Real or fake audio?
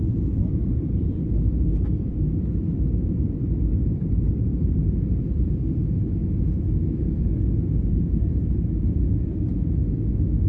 fake